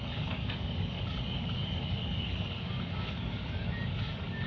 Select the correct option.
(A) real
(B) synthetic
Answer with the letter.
B